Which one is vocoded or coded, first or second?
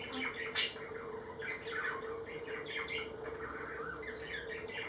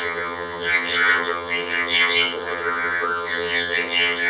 second